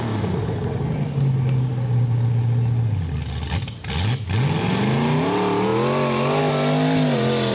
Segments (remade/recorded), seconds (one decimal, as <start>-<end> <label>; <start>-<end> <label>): 0.0-7.5 recorded